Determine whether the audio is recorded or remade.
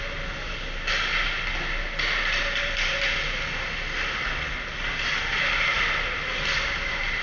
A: recorded